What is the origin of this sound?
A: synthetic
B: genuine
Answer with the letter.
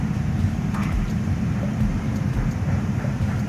A